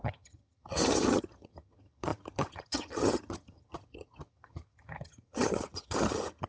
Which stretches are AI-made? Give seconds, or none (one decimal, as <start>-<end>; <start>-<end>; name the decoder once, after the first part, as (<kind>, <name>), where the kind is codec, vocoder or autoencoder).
0.0-6.5 (vocoder, HiFi-GAN)